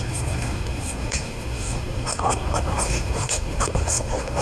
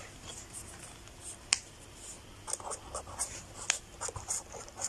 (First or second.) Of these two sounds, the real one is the second